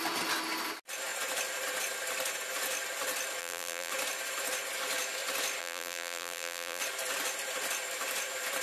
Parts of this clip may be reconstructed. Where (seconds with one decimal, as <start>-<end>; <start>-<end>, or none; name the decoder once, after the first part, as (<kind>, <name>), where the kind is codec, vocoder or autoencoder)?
3.4-3.9 (vocoder, BigVGAN v2); 5.6-6.8